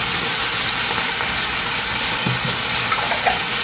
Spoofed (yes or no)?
no